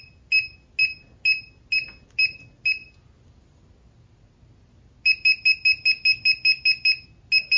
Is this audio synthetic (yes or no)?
no